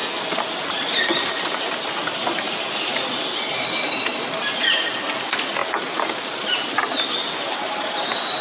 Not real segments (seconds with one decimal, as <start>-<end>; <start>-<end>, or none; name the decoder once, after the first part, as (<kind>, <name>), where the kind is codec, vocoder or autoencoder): none